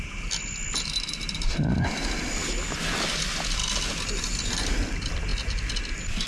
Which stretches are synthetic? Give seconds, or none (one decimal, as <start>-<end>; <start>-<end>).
none